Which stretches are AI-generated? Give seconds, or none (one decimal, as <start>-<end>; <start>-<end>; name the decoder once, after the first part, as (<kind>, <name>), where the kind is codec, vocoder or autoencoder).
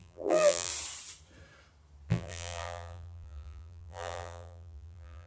0.0-0.7 (vocoder, BigVGAN v2); 2.1-5.3